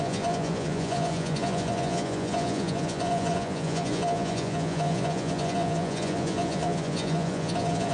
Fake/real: fake